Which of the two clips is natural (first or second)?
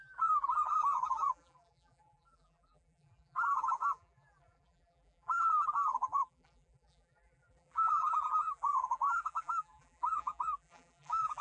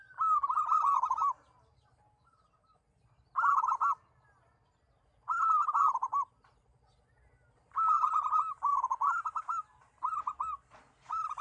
second